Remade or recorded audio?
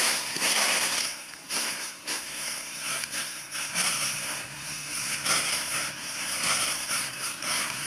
remade